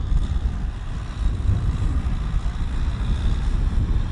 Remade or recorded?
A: recorded